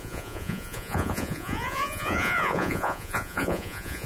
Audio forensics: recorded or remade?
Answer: remade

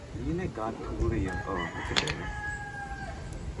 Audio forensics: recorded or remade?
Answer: recorded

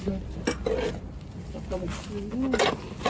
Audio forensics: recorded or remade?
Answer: recorded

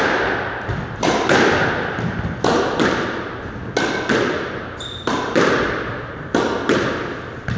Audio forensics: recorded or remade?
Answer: recorded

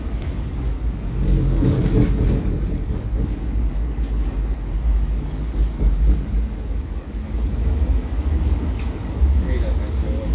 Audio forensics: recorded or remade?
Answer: remade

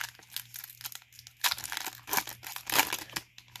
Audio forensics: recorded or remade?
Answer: recorded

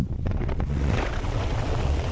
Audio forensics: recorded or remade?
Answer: remade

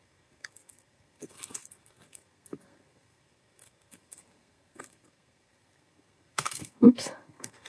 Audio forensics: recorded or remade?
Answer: remade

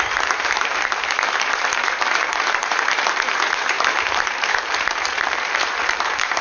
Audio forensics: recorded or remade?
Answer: remade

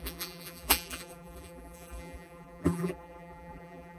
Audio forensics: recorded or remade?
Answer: remade